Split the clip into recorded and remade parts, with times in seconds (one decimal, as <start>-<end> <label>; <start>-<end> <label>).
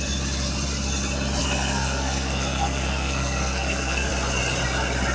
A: 0.0-1.4 recorded; 1.4-4.1 remade; 4.1-5.1 recorded